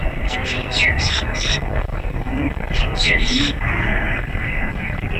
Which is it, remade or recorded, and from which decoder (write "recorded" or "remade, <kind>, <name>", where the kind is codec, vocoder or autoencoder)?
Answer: remade, codec, SNAC